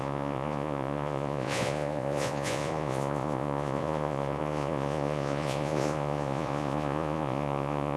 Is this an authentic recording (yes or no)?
no